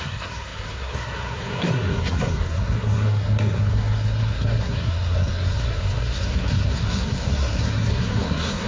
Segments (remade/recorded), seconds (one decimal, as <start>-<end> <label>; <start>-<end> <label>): 0.0-8.7 remade